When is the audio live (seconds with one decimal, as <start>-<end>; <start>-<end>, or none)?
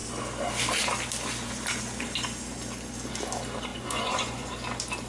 0.0-3.7; 4.5-5.1